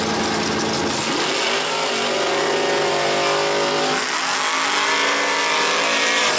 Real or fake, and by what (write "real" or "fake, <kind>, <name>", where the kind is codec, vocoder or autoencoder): real